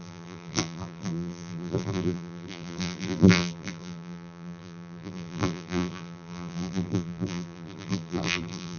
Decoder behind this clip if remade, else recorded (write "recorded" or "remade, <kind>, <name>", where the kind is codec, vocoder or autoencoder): remade, vocoder, BigVGAN v2